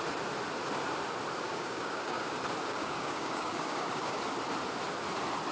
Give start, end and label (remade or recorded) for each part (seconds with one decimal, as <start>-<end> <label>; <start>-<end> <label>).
0.0-1.5 recorded; 1.5-2.3 remade; 2.3-2.7 recorded; 2.7-4.2 remade; 4.2-5.5 recorded